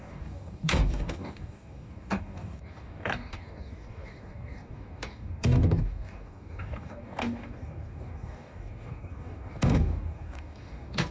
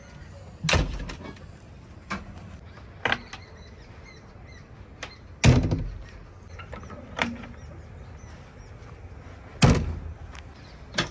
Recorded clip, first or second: second